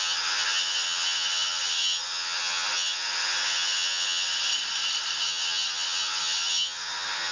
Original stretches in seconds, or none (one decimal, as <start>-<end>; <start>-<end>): 4.5-5.2

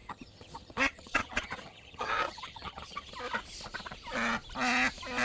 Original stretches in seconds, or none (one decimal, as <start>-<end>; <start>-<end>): 3.1-5.2

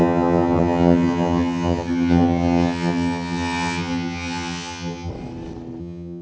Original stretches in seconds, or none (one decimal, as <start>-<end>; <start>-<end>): 5.1-5.8

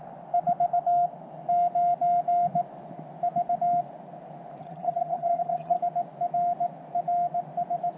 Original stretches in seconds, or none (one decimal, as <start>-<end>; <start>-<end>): 0.0-4.6; 5.8-8.0

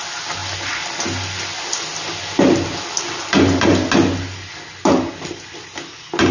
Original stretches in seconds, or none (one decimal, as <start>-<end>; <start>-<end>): 0.0-6.3